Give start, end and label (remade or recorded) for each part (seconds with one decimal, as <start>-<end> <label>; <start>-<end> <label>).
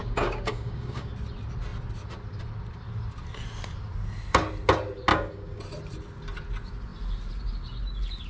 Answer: 0.0-1.1 remade; 1.1-5.1 recorded; 5.1-5.6 remade; 5.6-8.3 recorded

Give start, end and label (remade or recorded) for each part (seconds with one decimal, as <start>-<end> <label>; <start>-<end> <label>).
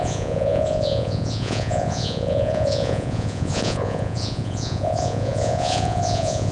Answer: 0.0-6.5 remade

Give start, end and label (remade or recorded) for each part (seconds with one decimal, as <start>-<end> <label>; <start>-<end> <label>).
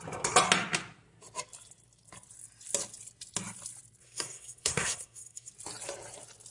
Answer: 0.0-4.0 recorded; 4.0-5.5 remade; 5.5-6.5 recorded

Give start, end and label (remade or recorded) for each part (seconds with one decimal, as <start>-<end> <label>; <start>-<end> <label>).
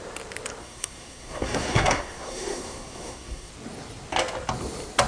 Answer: 0.0-0.6 recorded; 0.6-3.5 remade; 3.5-5.1 recorded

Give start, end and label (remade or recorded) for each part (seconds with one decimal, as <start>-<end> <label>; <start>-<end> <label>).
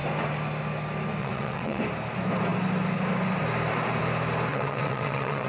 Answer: 0.0-1.2 recorded; 1.2-1.8 remade; 1.8-4.5 recorded; 4.5-5.5 remade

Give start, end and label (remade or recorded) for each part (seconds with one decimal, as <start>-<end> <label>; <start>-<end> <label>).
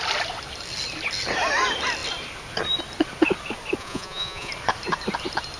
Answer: 0.0-3.8 recorded; 3.8-4.5 remade; 4.5-5.6 recorded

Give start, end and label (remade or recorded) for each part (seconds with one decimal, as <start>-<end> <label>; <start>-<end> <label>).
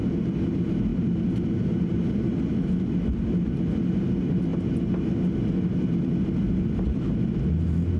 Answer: 0.0-8.0 recorded